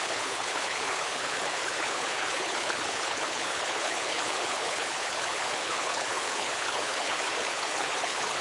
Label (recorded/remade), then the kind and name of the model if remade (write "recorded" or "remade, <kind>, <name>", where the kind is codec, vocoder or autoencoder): remade, codec, HILCodec